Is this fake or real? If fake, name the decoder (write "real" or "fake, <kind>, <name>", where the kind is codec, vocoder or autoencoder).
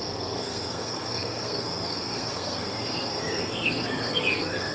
fake, codec, SNAC